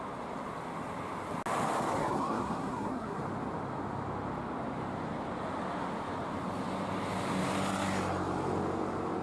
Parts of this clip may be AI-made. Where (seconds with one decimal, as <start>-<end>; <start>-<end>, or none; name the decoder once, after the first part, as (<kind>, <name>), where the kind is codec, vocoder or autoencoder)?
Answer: 2.0-3.2 (codec, SNAC)